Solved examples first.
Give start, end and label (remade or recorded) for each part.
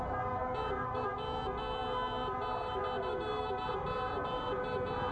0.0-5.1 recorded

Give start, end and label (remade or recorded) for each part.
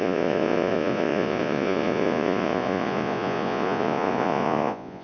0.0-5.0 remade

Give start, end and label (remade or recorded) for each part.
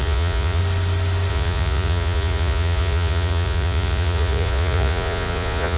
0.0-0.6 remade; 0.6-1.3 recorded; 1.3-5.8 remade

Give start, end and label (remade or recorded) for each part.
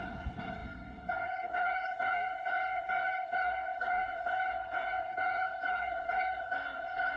0.0-7.2 remade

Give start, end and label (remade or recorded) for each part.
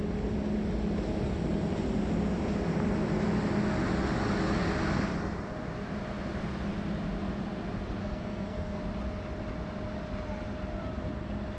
0.0-8.0 recorded; 8.0-8.8 remade; 8.8-11.6 recorded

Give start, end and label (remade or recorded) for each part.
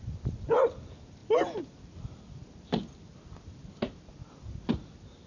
0.0-5.3 recorded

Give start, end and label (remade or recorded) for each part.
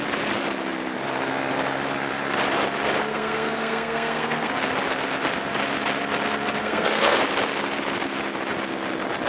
0.0-3.1 recorded; 3.1-4.5 remade; 4.5-6.6 recorded; 6.6-7.2 remade; 7.2-9.3 recorded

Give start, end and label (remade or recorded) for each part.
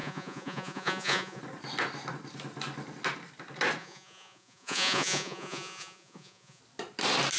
0.0-1.4 remade; 1.4-3.8 recorded; 3.8-6.6 remade; 6.6-7.4 recorded